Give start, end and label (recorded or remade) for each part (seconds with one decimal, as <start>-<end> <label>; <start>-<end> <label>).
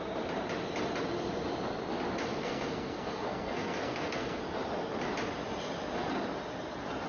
0.0-2.3 recorded; 2.3-4.4 remade; 4.4-7.1 recorded